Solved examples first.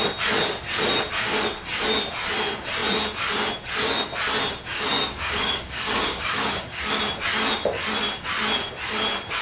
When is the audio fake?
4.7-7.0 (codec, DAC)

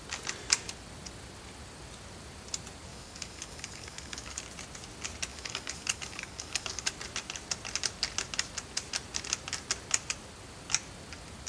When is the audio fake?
2.9-4.4 (codec, DAC); 5.3-6.9

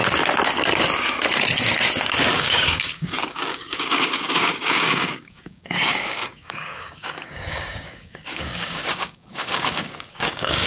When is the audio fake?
2.3-10.7 (codec, DAC)